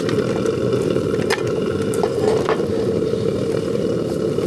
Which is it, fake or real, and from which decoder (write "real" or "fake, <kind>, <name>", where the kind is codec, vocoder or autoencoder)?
real